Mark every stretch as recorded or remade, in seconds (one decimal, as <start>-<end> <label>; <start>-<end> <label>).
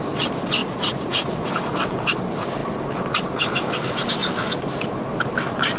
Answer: 0.0-0.6 recorded; 0.6-1.5 remade; 1.5-5.8 recorded